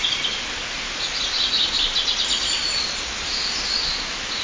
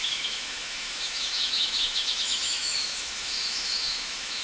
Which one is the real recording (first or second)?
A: first